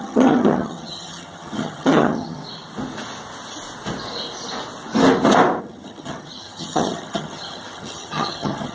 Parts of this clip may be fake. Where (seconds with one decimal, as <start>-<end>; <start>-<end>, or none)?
0.0-2.4; 5.6-8.7